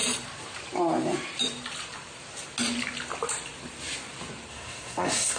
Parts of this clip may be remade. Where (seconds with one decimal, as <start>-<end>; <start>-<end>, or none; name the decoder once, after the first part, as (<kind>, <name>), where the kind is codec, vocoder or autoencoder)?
4.5-5.4 (codec, SNAC)